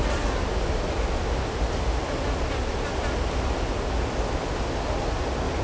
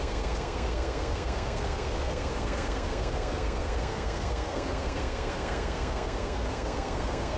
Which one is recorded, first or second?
first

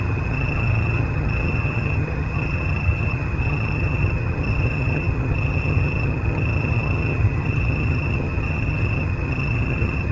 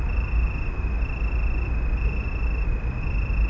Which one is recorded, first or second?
second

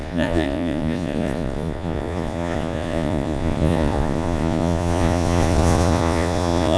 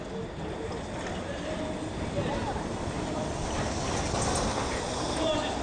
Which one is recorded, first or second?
second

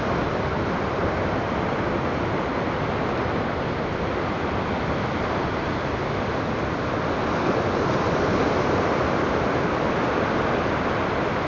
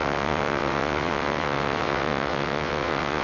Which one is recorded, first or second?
first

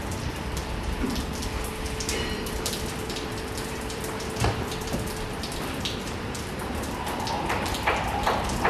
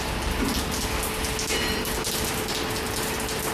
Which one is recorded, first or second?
second